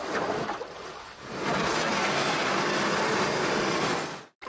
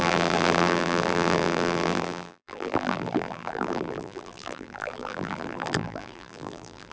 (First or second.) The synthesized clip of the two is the second